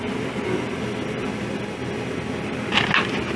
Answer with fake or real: real